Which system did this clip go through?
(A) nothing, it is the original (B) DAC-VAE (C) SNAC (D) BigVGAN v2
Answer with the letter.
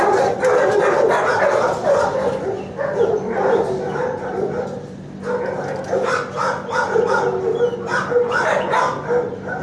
A